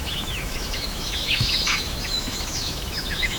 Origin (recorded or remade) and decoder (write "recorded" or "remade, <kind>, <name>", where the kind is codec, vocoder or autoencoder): remade, autoencoder, DAC-VAE